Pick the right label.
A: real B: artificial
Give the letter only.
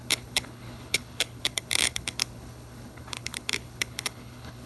B